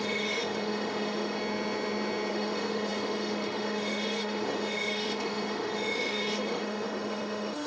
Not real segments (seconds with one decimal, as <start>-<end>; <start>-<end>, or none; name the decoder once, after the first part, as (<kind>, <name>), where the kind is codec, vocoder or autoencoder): 0.0-1.4 (autoencoder, DAC-VAE); 2.3-7.7